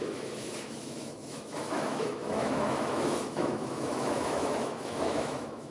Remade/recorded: remade